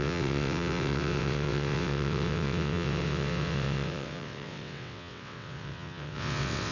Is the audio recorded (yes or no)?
no